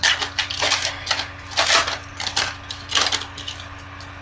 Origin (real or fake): real